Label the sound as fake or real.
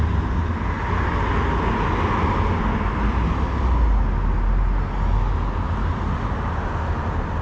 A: real